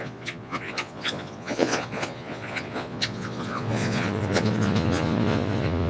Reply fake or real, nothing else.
fake